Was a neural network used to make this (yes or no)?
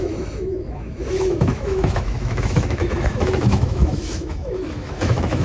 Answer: yes